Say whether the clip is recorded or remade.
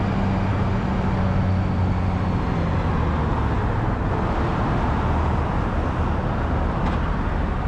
recorded